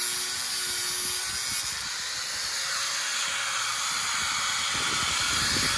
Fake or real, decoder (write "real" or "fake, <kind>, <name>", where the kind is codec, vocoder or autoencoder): real